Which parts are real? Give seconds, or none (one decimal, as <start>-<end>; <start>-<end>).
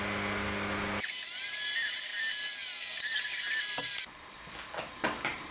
0.0-5.5